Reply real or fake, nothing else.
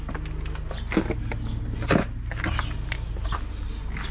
real